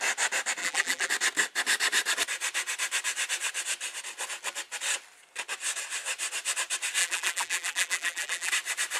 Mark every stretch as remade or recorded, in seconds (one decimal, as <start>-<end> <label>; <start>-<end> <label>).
0.0-0.6 recorded; 0.6-1.1 remade; 1.1-7.0 recorded; 7.0-8.5 remade; 8.5-9.0 recorded